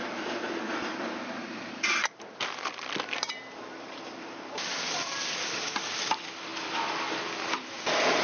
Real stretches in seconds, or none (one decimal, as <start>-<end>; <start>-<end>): 6.5-7.4